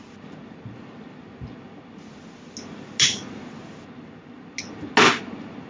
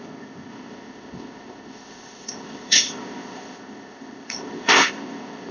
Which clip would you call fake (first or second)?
second